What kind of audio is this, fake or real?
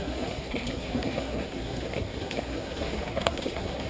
fake